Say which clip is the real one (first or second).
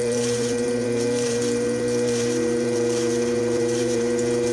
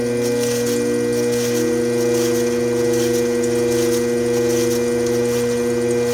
second